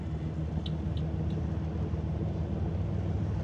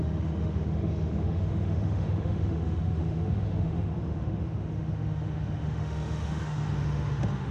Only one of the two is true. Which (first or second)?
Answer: first